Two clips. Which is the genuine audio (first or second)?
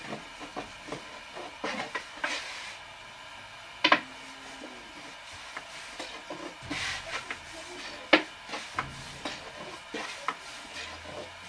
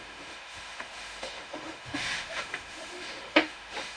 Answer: first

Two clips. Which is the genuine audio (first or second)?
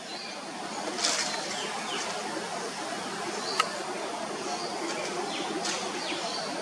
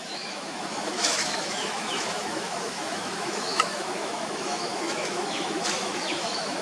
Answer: first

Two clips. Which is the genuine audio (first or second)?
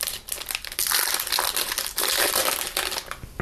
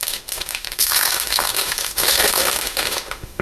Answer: first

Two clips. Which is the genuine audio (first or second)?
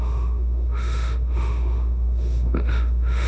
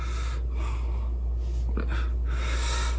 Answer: second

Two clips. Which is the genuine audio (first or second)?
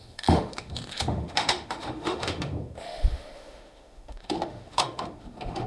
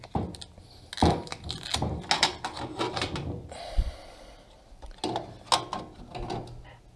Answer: second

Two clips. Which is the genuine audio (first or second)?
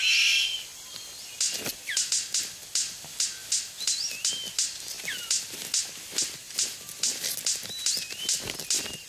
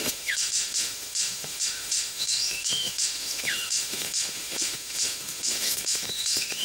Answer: first